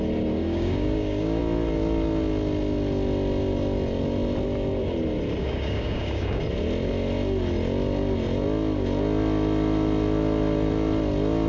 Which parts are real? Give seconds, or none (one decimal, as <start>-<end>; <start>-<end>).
0.0-0.4; 1.4-5.4; 6.4-11.5